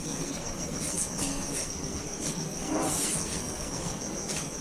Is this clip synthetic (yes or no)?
yes